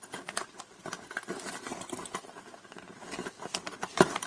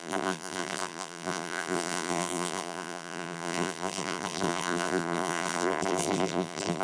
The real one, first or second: first